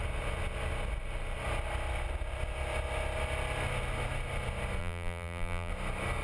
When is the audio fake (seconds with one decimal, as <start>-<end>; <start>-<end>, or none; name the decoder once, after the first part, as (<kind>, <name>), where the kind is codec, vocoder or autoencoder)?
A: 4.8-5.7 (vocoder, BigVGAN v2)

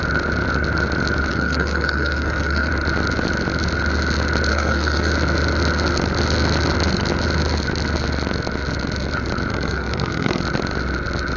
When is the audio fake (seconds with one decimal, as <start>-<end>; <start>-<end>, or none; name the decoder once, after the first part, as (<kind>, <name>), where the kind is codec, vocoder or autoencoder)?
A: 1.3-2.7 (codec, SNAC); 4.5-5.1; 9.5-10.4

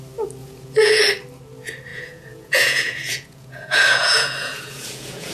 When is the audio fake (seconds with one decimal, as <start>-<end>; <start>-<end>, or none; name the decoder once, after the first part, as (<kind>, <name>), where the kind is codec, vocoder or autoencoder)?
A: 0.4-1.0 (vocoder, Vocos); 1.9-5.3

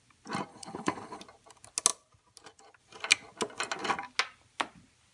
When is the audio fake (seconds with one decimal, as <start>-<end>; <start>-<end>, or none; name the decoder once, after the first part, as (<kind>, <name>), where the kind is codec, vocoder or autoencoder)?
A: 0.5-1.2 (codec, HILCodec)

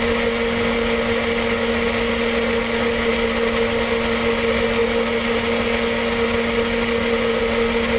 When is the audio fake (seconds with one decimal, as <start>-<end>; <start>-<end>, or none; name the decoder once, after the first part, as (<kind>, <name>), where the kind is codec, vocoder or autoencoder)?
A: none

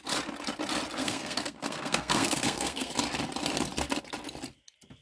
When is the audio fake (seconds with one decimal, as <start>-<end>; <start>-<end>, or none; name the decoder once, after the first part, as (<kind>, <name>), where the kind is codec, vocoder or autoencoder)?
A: 1.0-2.9 (codec, SNAC)